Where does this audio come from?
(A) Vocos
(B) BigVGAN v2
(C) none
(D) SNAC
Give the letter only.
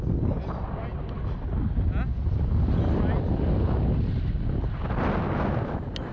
C